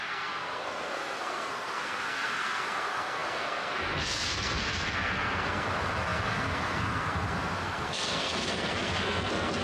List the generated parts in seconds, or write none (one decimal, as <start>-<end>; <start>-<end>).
0.0-9.6